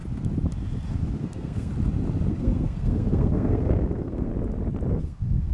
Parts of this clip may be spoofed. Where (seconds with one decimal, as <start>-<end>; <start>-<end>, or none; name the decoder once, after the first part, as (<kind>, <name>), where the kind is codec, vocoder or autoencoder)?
1.2-1.7 (codec, SNAC); 2.3-4.3; 4.9-5.5